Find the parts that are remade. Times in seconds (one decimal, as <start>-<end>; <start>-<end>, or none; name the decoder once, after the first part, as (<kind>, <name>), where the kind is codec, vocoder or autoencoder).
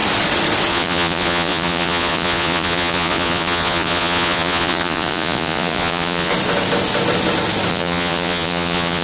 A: 0.7-6.3 (vocoder, Vocos); 7.7-9.0